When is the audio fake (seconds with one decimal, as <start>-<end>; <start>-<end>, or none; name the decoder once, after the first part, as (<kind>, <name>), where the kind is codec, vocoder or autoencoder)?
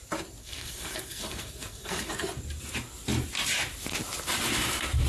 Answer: 0.4-2.1 (codec, SNAC)